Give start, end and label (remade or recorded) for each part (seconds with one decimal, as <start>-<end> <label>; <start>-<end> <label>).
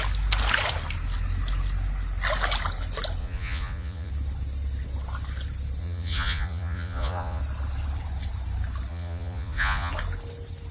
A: 0.0-3.2 recorded; 3.2-4.1 remade; 4.1-5.8 recorded; 5.8-7.4 remade; 7.4-8.9 recorded; 8.9-9.9 remade; 9.9-10.7 recorded